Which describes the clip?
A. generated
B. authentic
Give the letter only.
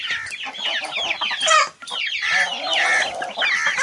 B